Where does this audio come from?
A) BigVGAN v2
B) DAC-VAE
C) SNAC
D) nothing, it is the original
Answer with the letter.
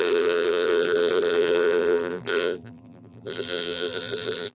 A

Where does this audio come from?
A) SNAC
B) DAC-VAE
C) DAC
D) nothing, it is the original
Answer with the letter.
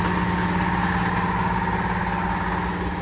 D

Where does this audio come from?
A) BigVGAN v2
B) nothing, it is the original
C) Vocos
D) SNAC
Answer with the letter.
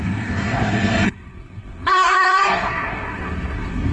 D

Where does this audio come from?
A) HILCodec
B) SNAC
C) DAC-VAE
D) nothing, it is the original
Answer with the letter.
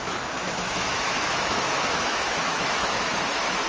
C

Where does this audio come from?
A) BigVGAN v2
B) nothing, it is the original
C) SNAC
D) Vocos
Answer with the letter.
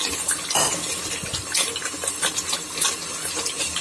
B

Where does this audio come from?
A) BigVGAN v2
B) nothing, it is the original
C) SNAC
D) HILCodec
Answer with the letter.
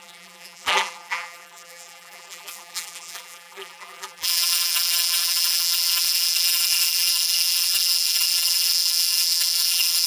A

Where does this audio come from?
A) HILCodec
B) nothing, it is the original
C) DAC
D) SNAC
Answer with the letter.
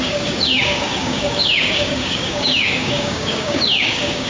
C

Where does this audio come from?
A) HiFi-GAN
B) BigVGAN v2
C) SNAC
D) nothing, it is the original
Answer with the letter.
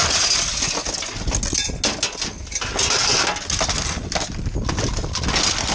D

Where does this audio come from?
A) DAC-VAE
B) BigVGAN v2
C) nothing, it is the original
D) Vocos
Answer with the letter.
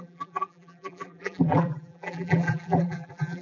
B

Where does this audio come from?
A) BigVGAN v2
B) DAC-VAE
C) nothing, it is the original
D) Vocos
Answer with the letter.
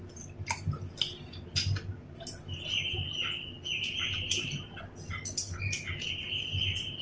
C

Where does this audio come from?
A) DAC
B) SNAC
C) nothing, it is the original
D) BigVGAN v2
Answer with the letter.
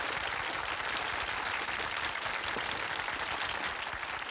C